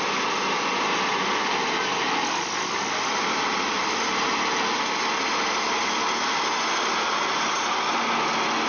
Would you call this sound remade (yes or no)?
no